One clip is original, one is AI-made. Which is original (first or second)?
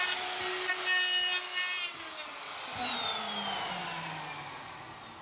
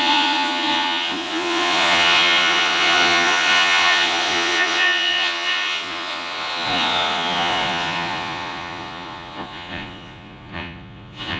first